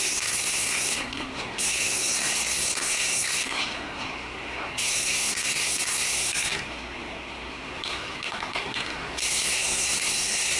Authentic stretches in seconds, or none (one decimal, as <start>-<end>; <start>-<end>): none